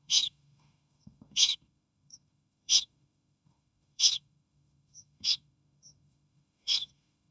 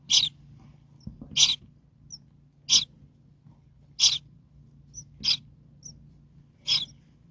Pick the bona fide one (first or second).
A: second